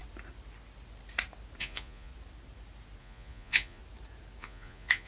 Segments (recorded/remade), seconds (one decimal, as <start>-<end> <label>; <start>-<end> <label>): 0.0-1.6 recorded; 1.6-2.1 remade; 2.1-3.0 recorded; 3.0-3.8 remade; 3.8-4.4 recorded; 4.4-5.1 remade